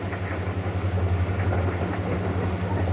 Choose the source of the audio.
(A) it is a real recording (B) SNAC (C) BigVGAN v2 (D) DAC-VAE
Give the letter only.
A